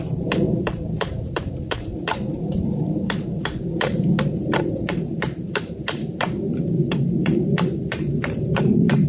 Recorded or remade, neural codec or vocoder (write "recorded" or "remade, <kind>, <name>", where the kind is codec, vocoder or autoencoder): remade, vocoder, BigVGAN v2